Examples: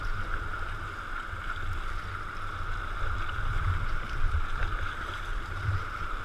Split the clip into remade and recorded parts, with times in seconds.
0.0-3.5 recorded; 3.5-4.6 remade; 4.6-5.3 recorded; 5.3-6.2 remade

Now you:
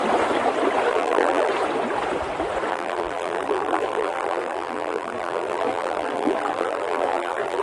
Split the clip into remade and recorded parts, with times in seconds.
0.0-0.9 recorded; 0.9-1.5 remade; 1.5-2.7 recorded; 2.7-7.6 remade

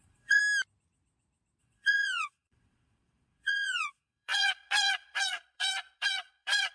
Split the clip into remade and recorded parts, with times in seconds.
0.0-0.4 remade; 0.4-1.6 recorded; 1.6-6.7 remade

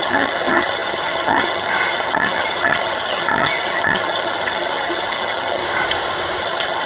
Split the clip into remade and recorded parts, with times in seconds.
0.0-5.6 remade; 5.6-6.4 recorded; 6.4-6.9 remade

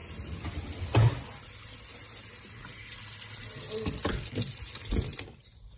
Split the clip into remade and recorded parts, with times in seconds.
0.0-5.1 recorded; 5.1-5.8 remade